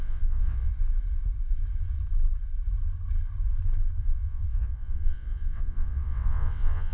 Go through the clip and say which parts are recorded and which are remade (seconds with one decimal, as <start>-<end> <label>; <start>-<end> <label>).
0.0-0.7 remade; 0.7-4.0 recorded; 4.0-6.9 remade